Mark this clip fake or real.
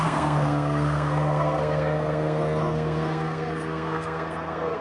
fake